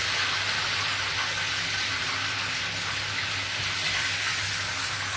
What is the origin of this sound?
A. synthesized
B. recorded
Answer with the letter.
B